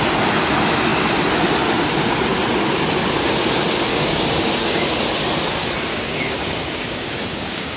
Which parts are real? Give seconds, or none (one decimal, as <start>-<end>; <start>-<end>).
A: 0.0-3.9; 5.0-5.9